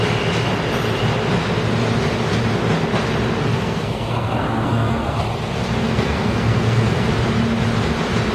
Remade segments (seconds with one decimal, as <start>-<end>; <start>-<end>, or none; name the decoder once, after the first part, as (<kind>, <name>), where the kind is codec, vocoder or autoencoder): 3.5-5.2 (codec, SNAC); 5.8-7.1